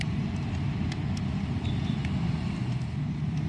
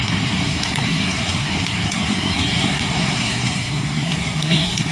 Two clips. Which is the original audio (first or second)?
first